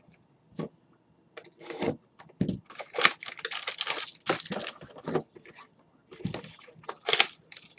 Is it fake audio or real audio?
real